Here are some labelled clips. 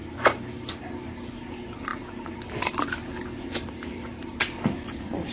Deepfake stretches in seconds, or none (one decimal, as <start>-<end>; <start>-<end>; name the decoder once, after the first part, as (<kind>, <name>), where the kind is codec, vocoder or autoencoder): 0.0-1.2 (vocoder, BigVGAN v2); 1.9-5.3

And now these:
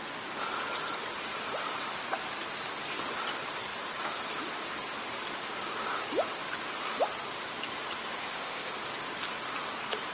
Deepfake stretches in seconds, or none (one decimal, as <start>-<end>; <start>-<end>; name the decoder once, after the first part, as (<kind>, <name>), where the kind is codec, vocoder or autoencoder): 8.2-8.7 (codec, ZipCodec)

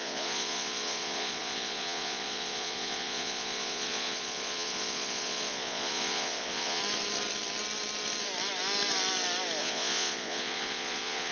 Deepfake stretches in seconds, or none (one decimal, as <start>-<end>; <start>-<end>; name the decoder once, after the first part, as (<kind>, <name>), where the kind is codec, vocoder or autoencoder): 0.0-6.8 (vocoder, Vocos); 9.6-11.3